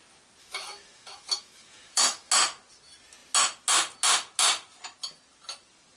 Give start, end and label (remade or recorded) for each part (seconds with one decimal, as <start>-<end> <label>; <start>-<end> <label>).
0.0-0.4 recorded; 0.4-2.3 remade; 2.3-6.0 recorded